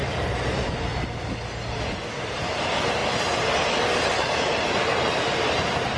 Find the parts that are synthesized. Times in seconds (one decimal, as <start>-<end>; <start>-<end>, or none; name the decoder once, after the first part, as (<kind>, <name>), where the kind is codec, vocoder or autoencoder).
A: 0.0-0.9 (vocoder, BigVGAN v2); 2.6-3.0; 4.0-6.0